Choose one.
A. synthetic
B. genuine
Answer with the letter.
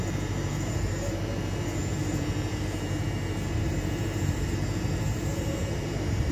A